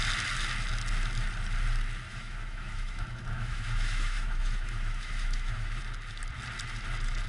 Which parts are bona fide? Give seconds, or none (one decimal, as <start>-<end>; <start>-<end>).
0.0-2.1; 5.8-7.3